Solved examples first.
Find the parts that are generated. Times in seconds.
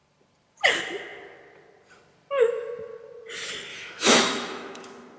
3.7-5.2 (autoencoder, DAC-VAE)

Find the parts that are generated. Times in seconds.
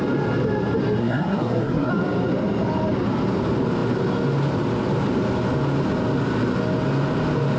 1.0-1.9 (codec, SNAC)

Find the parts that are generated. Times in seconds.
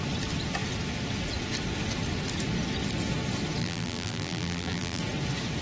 3.6-5.0 (vocoder, BigVGAN v2)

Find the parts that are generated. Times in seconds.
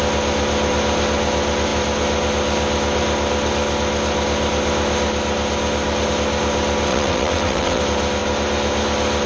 6.9-7.8 (vocoder, WaveNeXt)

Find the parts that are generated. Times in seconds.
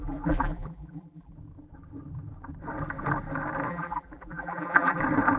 0.0-1.3 (vocoder, BigVGAN v2); 3.7-5.0